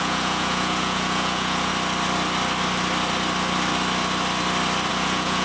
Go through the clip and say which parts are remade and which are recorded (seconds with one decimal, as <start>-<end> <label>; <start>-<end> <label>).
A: 0.0-1.7 remade; 1.7-4.9 recorded; 4.9-5.4 remade